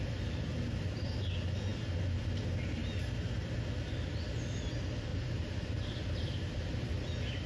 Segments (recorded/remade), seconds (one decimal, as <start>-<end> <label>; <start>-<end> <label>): 0.0-5.1 recorded; 5.1-6.5 remade; 6.5-7.5 recorded